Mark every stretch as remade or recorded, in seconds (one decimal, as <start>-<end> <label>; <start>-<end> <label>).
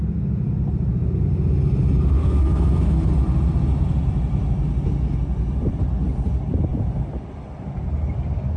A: 0.0-2.2 recorded; 2.2-3.1 remade; 3.1-8.6 recorded